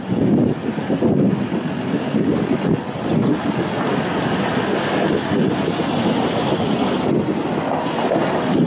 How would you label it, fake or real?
real